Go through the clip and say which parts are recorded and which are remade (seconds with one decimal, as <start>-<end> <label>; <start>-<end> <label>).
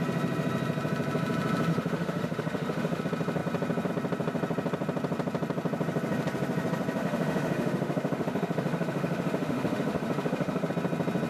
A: 0.0-1.7 recorded; 1.7-3.0 remade; 3.0-7.0 recorded; 7.0-10.7 remade; 10.7-11.3 recorded